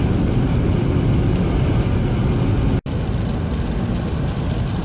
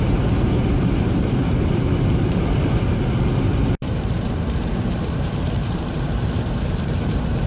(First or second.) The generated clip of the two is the second